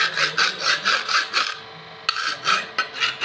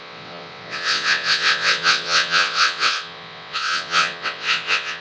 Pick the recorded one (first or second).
first